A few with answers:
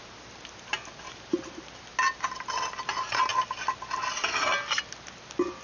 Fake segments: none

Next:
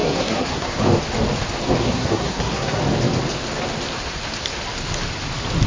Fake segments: 0.0-0.8 (codec, SNAC); 1.8-2.8

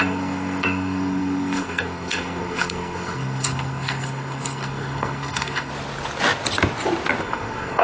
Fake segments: 0.0-5.7 (codec, SNAC); 7.2-7.8

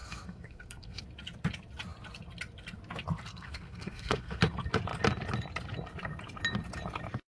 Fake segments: 0.0-1.0 (codec, SNAC); 3.3-4.4

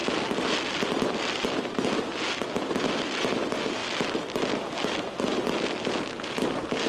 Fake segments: none

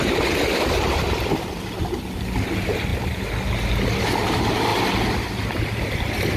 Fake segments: none